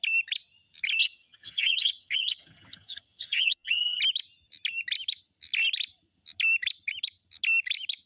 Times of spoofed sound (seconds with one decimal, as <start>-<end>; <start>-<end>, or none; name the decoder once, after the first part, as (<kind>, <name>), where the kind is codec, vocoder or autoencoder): 1.0-4.0 (vocoder, HiFi-GAN)